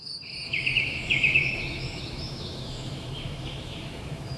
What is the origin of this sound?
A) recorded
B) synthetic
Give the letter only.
B